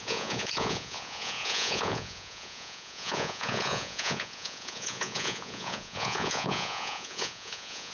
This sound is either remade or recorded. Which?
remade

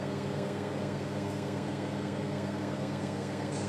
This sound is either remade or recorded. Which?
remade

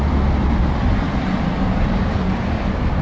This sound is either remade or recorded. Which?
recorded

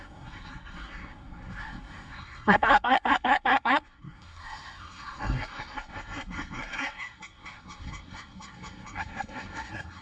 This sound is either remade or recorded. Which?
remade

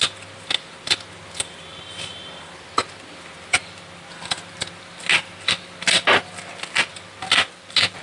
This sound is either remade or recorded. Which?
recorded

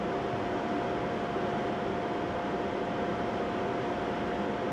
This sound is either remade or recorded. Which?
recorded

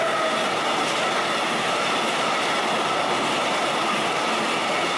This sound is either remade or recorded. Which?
recorded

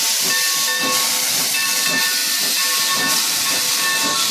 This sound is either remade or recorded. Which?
recorded